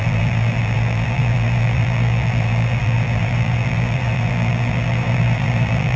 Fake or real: fake